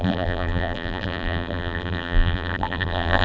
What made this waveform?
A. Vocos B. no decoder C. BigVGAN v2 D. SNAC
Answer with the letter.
C